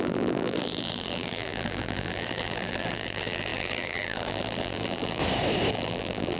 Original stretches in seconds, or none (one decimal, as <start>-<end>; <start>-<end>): 5.2-5.7